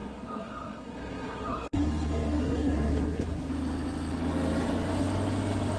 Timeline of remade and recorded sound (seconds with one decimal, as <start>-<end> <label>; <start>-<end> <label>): 0.0-3.5 remade; 3.5-5.8 recorded